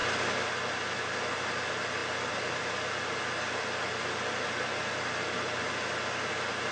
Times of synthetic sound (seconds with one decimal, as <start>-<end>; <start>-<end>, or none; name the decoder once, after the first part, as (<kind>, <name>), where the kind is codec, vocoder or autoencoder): none